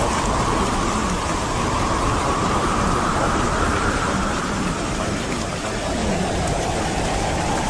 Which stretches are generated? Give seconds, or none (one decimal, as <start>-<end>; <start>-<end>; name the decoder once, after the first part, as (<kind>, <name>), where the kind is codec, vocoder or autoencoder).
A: 2.4-5.6 (vocoder, BigVGAN v2); 6.0-7.2